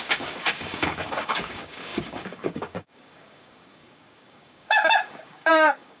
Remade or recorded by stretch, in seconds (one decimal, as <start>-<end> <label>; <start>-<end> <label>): 0.0-6.0 remade